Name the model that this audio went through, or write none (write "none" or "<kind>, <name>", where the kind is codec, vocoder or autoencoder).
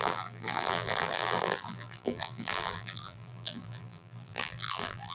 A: vocoder, BigVGAN v2